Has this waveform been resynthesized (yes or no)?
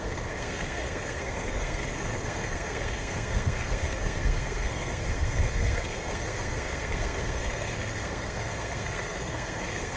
yes